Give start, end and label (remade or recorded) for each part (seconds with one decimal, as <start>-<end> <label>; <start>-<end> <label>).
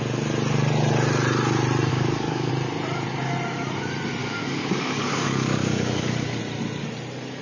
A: 0.0-1.9 recorded; 1.9-2.5 remade; 2.5-4.2 recorded; 4.2-6.4 remade; 6.4-7.4 recorded